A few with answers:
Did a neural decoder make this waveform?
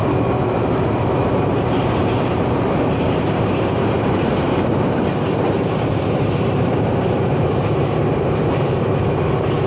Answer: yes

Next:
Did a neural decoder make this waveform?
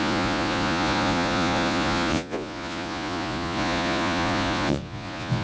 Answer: yes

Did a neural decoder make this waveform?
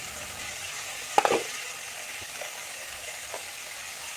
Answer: yes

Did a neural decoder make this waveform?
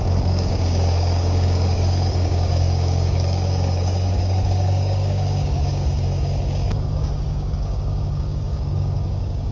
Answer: yes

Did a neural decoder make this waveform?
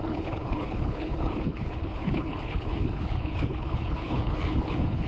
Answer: yes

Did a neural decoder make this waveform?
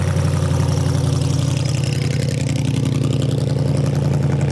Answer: no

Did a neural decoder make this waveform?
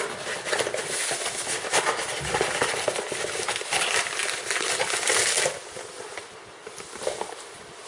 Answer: no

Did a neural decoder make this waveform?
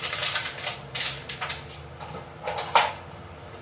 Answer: no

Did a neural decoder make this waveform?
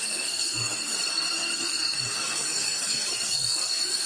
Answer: yes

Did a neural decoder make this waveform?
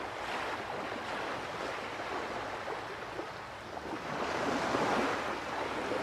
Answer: no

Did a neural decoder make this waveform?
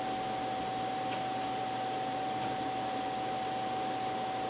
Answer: no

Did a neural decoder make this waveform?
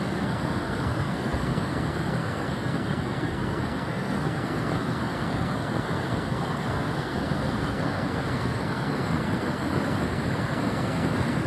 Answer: yes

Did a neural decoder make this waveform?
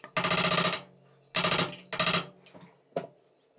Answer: no